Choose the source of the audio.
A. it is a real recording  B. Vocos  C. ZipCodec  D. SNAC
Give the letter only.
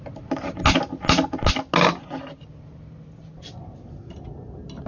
A